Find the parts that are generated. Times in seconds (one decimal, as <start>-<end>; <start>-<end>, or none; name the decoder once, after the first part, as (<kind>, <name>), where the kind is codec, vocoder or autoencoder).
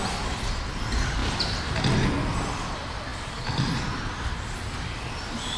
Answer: 0.0-0.7 (vocoder, BigVGAN v2); 1.2-1.8